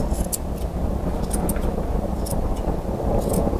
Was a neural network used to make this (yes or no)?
no